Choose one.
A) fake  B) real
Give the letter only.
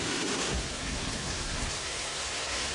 A